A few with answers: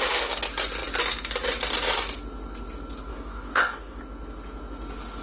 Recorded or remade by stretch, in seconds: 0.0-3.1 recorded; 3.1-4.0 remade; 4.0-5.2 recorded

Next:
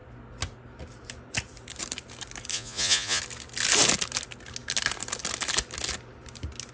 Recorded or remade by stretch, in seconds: 0.0-2.5 recorded; 2.5-3.2 remade; 3.2-6.7 recorded

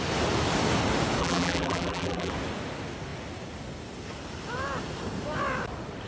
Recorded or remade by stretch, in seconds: 0.0-1.2 recorded; 1.2-2.3 remade; 2.3-6.1 recorded